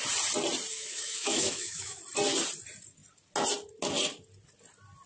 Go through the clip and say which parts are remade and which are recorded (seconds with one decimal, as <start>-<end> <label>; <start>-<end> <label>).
0.0-0.7 recorded; 0.7-2.0 remade; 2.0-5.1 recorded